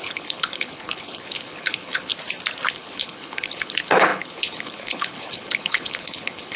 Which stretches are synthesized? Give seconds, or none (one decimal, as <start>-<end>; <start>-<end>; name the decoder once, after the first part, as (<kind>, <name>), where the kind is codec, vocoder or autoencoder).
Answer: 0.0-2.1 (codec, HILCodec); 2.7-6.6